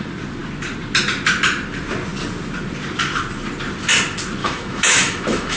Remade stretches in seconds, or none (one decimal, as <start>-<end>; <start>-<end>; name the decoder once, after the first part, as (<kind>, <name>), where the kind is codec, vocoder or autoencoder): 4.4-5.6 (autoencoder, DAC-VAE)